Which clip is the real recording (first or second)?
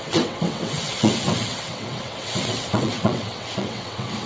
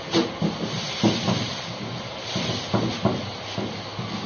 second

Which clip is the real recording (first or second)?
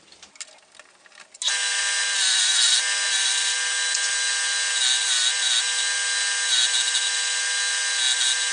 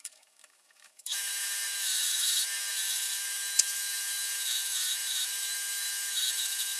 first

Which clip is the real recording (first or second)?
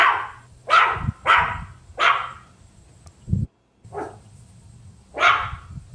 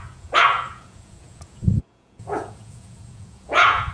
first